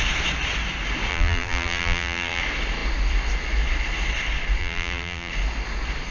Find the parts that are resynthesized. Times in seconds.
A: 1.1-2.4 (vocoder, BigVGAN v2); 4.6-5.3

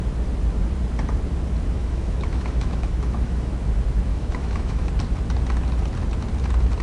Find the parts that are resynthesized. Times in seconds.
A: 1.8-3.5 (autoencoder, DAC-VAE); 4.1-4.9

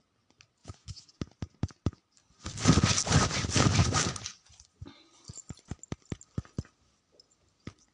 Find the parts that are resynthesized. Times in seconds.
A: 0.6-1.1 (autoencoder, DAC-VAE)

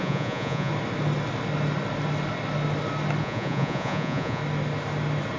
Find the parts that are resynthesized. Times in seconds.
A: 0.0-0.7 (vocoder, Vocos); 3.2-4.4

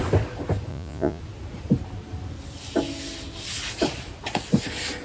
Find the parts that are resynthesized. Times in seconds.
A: 0.7-1.2 (vocoder, Vocos)

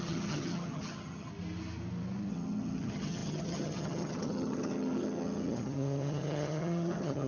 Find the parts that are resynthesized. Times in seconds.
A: 0.0-1.3 (vocoder, HiFi-GAN); 2.3-7.3

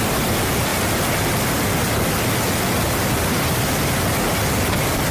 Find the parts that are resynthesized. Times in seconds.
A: none